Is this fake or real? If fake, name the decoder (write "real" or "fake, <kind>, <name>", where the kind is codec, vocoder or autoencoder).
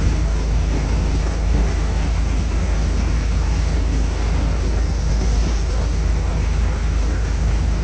fake, codec, DAC